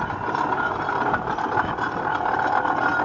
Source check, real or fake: real